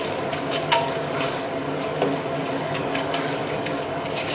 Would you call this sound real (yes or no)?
no